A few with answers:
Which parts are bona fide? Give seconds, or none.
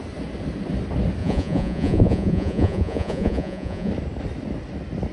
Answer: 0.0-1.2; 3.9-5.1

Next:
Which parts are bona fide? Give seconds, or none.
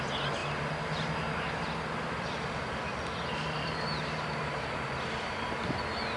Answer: 0.4-2.0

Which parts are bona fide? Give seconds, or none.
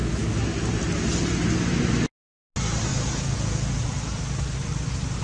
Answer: 0.0-2.9; 4.2-5.2